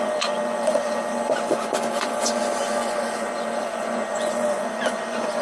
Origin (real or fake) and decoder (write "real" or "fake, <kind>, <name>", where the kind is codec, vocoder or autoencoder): fake, vocoder, Vocos